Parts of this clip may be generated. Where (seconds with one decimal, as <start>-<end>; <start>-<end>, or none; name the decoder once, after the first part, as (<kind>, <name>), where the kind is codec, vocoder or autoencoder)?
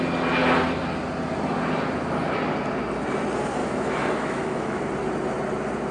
3.6-4.8 (autoencoder, DAC-VAE)